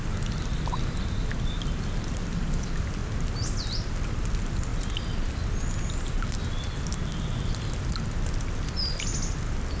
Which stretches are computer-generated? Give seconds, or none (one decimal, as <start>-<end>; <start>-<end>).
none